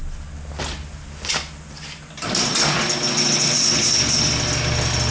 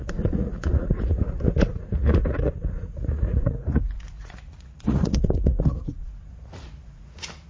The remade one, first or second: second